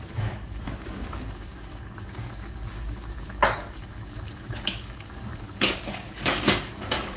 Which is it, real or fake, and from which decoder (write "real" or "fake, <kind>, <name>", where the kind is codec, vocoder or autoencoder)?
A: fake, codec, DAC